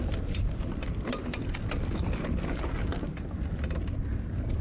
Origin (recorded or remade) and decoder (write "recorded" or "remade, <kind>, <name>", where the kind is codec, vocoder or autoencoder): recorded